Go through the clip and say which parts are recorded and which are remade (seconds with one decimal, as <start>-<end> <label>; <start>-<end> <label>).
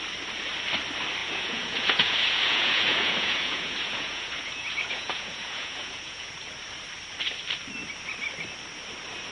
0.0-1.2 recorded; 1.2-6.3 remade; 6.3-9.3 recorded